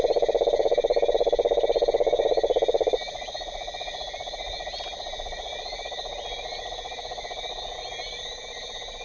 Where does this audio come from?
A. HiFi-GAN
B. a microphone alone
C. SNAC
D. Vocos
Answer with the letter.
B